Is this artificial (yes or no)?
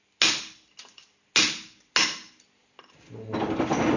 no